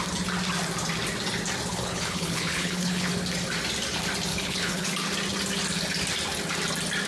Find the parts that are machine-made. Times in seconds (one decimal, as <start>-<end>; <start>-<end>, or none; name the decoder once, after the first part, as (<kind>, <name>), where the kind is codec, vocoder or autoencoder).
1.7-3.1 (codec, HILCodec); 4.3-4.9